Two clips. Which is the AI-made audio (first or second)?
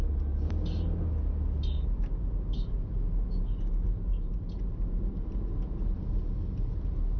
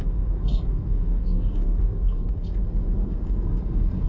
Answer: second